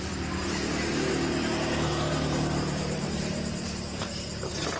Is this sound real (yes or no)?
no